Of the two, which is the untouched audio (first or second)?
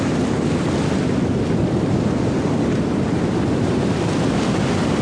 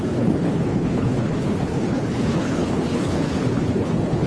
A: first